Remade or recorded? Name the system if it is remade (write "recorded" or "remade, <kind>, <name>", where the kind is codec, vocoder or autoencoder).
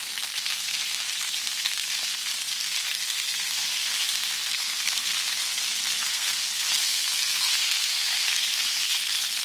remade, codec, SNAC